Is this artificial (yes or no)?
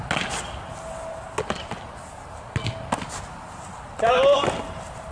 no